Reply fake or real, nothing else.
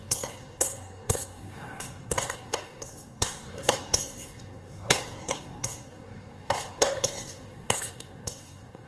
fake